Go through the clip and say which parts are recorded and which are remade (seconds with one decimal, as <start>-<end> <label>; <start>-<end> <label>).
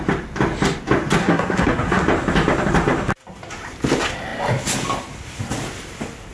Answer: 0.0-1.2 recorded; 1.2-2.0 remade; 2.0-6.3 recorded